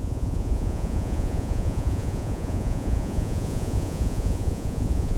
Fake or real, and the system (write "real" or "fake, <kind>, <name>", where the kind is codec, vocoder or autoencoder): fake, vocoder, Vocos